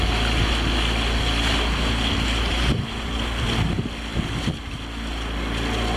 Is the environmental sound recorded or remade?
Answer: recorded